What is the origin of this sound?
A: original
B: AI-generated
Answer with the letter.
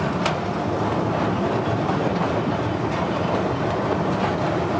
A